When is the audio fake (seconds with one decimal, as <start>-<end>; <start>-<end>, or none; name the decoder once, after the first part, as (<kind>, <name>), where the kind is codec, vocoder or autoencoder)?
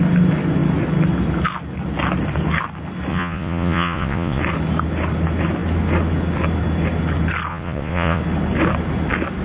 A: 3.1-4.4 (vocoder, Vocos); 7.5-8.2